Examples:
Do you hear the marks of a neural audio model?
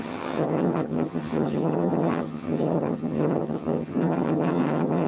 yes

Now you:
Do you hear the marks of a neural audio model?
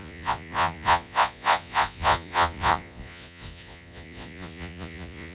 yes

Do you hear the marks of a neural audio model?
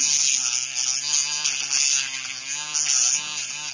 no